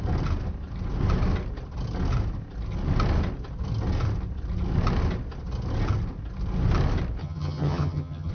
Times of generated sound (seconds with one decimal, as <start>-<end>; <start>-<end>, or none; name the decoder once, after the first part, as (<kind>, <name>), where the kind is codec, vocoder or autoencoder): 7.2-8.3 (vocoder, HiFi-GAN)